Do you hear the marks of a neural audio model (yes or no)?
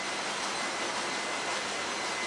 no